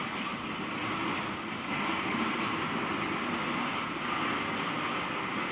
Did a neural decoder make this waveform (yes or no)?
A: no